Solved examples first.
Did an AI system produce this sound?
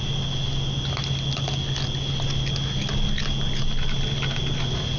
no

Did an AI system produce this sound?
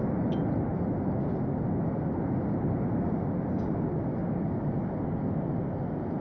no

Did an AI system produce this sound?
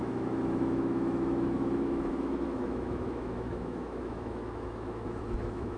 yes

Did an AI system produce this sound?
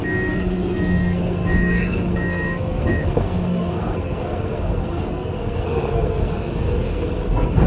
yes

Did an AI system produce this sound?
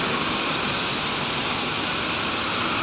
no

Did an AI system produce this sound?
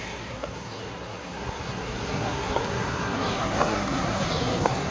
yes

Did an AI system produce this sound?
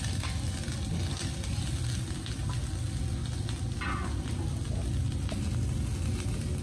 no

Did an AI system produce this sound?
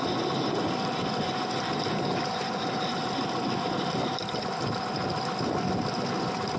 no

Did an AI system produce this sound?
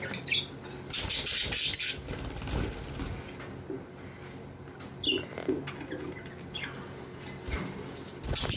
no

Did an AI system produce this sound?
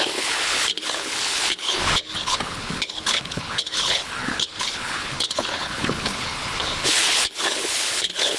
yes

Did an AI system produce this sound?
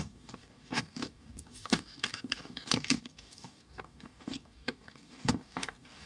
yes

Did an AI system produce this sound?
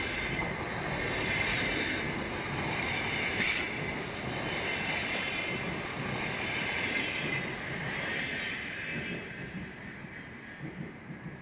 no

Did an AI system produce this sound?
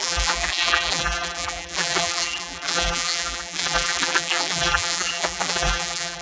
yes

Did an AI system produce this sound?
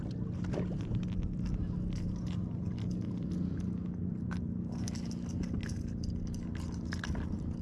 no